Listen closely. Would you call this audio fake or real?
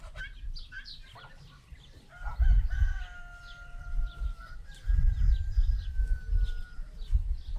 real